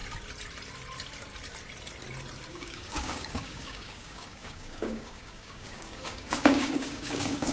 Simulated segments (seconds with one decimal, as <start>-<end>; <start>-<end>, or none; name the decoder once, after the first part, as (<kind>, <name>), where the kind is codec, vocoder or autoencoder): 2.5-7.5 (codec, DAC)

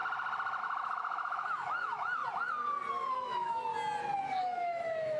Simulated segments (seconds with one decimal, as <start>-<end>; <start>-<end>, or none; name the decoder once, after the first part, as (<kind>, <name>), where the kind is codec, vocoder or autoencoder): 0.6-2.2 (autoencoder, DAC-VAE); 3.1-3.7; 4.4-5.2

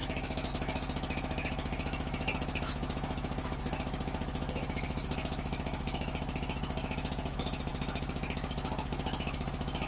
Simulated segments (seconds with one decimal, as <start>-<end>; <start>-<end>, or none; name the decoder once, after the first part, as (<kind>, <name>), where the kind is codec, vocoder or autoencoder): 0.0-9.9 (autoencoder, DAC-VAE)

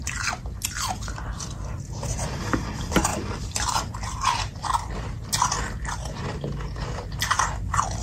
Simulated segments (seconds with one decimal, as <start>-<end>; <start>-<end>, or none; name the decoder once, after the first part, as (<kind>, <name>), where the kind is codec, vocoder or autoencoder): none

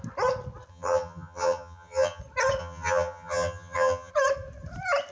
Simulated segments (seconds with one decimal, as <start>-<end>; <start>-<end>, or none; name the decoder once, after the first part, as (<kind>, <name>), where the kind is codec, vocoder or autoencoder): 0.7-2.2 (vocoder, HiFi-GAN); 2.6-4.1

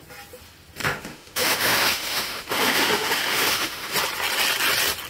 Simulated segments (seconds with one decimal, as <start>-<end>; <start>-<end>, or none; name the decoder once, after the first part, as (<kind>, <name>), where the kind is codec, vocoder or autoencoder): 0.8-3.9 (autoencoder, DAC-VAE)

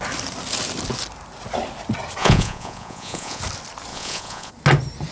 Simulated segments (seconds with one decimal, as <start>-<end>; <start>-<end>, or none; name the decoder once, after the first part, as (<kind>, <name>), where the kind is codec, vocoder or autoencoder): 2.2-3.4 (vocoder, Vocos); 3.9-4.5

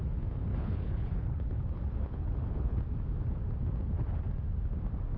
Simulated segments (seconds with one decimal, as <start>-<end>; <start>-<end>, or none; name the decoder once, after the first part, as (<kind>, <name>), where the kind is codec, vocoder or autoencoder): 0.5-2.8 (codec, HILCodec)